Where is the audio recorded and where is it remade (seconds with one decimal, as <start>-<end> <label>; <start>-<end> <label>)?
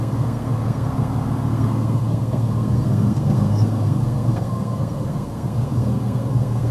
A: 0.0-6.7 remade